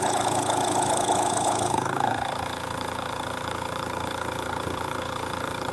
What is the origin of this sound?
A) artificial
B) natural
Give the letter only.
A